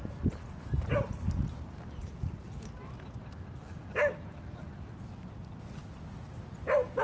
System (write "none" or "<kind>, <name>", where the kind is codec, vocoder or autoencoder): none